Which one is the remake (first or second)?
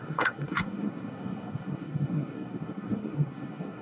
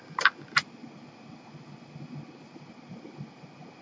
first